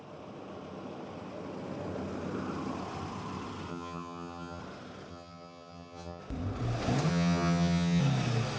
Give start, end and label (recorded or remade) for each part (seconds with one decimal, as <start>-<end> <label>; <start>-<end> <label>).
0.0-3.7 recorded; 3.7-4.6 remade; 4.6-5.1 recorded; 5.1-6.2 remade; 6.2-7.1 recorded; 7.1-8.0 remade; 8.0-8.6 recorded